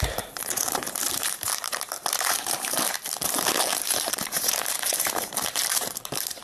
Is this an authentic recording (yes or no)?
no